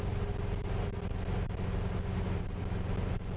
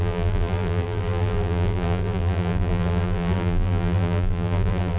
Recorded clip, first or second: first